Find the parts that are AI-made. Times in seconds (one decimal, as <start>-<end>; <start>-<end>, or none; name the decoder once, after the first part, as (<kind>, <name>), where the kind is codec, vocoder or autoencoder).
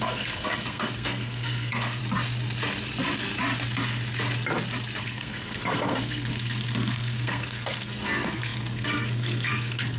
0.0-2.0 (codec, SNAC); 5.0-10.0